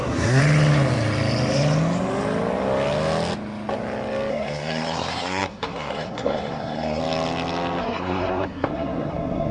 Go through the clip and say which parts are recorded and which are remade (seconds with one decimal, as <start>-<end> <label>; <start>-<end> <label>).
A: 0.0-0.4 remade; 0.4-4.3 recorded; 4.3-7.0 remade; 7.0-7.8 recorded; 7.8-9.5 remade